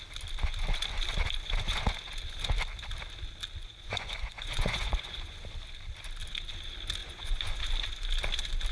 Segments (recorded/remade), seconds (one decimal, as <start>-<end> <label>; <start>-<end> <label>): 0.0-3.6 recorded; 3.6-5.4 remade; 5.4-7.0 recorded; 7.0-7.6 remade; 7.6-8.7 recorded